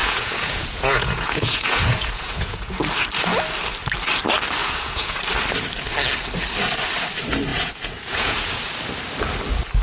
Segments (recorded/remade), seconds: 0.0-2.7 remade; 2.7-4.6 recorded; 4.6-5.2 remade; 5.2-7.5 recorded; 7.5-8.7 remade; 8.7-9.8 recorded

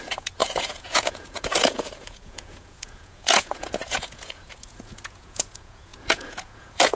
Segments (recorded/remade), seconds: 0.0-6.9 remade

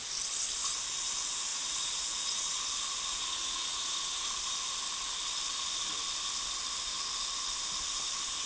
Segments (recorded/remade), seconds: 0.0-1.5 recorded; 1.5-2.6 remade; 2.6-3.2 recorded; 3.2-4.3 remade; 4.3-8.5 recorded

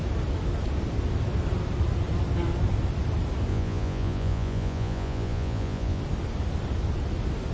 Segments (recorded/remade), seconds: 0.0-3.5 recorded; 3.5-6.0 remade; 6.0-7.5 recorded

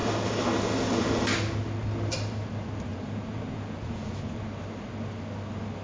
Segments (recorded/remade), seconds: 0.0-2.9 recorded; 2.9-4.4 remade; 4.4-5.8 recorded